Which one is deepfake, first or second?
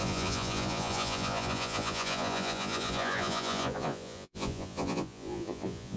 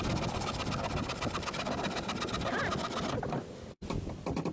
first